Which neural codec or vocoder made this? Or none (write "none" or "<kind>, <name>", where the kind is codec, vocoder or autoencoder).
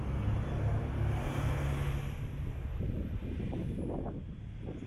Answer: none